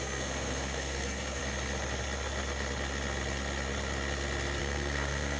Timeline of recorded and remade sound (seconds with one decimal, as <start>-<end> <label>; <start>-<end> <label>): 0.0-1.4 remade; 1.4-4.6 recorded; 4.6-5.4 remade